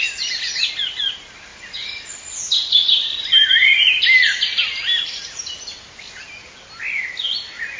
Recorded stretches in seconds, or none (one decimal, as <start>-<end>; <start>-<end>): 0.0-1.5; 6.2-7.8